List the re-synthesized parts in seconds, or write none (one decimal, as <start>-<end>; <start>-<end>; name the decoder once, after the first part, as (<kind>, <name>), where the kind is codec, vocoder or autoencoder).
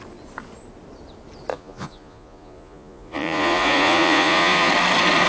1.5-4.7 (vocoder, Vocos)